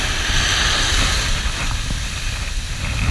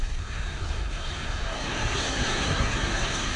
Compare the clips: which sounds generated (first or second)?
second